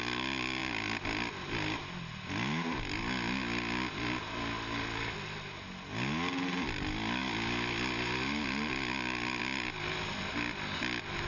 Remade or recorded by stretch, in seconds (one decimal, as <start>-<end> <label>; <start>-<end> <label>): 0.0-11.3 recorded